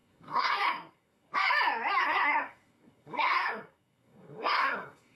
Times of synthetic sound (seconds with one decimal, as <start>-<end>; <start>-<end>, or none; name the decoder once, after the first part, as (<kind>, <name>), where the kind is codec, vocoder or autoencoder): 0.0-1.3 (codec, SNAC); 2.0-5.2

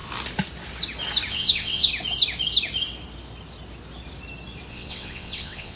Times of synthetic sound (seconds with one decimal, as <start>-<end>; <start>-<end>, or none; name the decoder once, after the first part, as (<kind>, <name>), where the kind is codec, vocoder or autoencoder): 1.3-1.9 (vocoder, WaveNeXt); 4.7-5.8

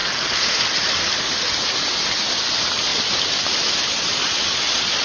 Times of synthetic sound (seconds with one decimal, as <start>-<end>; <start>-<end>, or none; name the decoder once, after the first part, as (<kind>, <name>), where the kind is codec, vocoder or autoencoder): none